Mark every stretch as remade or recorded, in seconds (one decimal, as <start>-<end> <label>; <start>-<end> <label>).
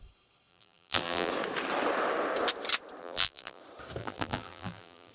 0.0-0.5 recorded; 0.5-1.3 remade; 1.3-3.0 recorded; 3.0-3.6 remade; 3.6-4.0 recorded; 4.0-5.1 remade